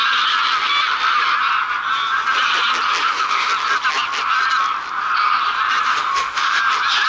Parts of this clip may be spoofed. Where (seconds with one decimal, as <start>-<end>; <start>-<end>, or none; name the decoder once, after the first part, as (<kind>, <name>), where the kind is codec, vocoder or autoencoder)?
3.0-3.5 (autoencoder, DAC-VAE); 5.9-6.6